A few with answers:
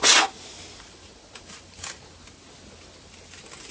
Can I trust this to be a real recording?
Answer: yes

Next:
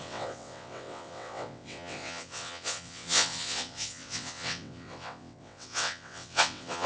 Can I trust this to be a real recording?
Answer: no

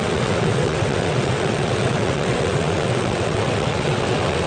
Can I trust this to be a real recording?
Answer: no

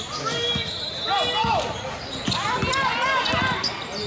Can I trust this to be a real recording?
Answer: yes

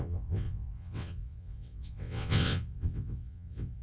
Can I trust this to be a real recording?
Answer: no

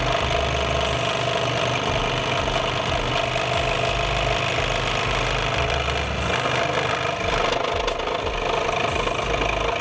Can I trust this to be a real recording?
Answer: yes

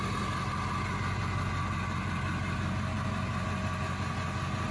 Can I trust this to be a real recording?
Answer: yes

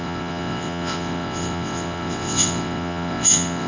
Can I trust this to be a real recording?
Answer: no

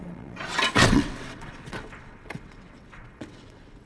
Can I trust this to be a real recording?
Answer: no